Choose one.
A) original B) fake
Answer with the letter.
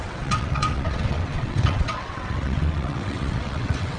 B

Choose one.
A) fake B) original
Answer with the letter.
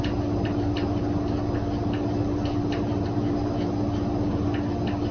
B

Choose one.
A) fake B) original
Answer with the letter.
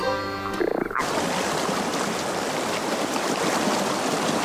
B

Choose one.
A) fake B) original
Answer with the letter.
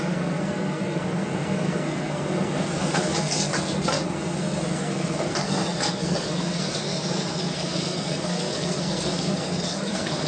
A